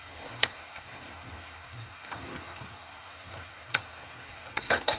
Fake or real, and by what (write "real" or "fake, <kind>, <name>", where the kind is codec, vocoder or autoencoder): fake, codec, SNAC